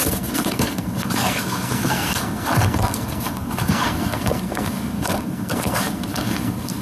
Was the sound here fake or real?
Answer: fake